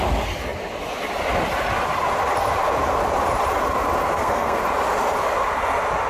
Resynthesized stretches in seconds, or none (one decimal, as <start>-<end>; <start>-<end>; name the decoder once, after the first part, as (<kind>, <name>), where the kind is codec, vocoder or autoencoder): 4.0-4.6 (codec, SNAC)